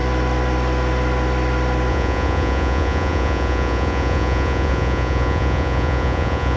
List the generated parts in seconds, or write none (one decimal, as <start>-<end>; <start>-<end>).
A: 1.9-6.6